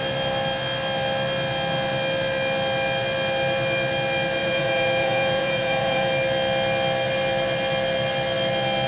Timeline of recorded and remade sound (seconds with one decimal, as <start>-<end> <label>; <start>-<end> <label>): 0.0-4.4 recorded; 4.4-6.1 remade; 6.1-8.9 recorded